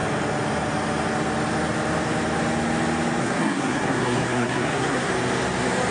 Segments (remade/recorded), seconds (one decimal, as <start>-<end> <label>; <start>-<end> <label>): 0.0-3.2 recorded; 3.2-5.1 remade; 5.1-5.9 recorded